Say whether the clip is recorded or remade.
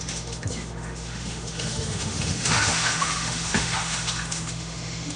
remade